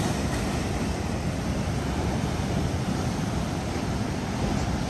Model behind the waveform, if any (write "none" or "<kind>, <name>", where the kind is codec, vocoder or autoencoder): none